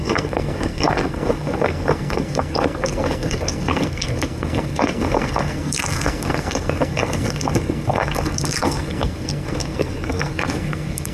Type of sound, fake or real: fake